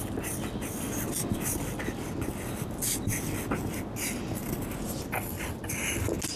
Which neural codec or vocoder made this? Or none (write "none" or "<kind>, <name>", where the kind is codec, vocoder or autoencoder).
none